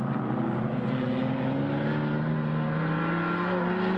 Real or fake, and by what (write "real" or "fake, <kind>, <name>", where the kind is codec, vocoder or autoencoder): real